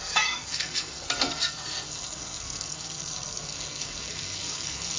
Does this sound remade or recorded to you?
remade